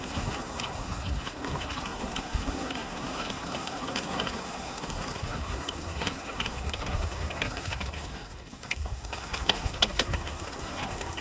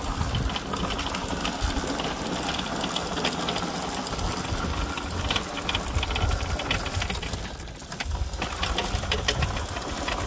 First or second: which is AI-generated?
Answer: first